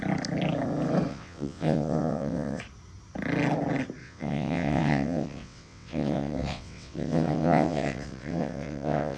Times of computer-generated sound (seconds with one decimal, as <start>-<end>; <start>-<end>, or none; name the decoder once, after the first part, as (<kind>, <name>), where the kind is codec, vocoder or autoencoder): 1.1-2.6 (vocoder, WaveNeXt); 4.0-9.2